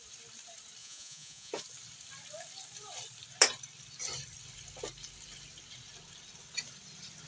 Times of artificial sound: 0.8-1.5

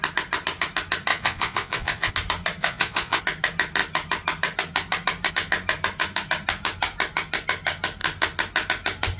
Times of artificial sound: 1.1-2.1; 2.6-3.2